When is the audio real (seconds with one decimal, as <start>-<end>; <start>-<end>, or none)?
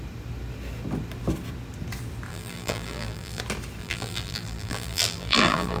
0.0-2.3; 3.4-3.8